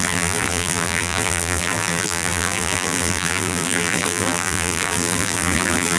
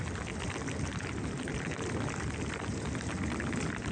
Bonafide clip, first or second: second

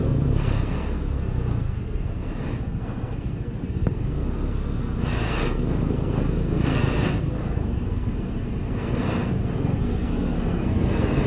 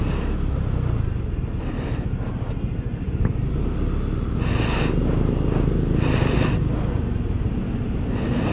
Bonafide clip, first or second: second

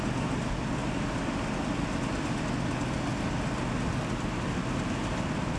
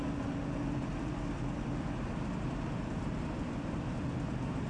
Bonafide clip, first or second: first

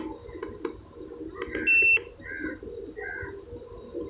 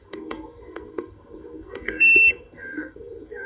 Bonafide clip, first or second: first